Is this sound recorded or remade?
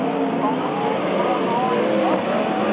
recorded